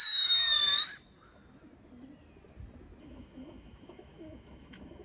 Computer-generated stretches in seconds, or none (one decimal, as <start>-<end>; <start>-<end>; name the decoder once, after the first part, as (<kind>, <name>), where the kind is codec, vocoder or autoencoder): 0.0-0.6 (autoencoder, DAC-VAE); 3.0-5.0